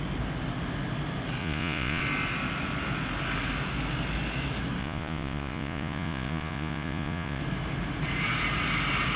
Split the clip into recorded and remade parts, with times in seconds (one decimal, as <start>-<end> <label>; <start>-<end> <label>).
0.0-1.4 recorded; 1.4-2.0 remade; 2.0-4.8 recorded; 4.8-7.4 remade; 7.4-9.2 recorded